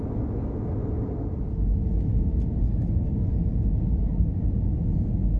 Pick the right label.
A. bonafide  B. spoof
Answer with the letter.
A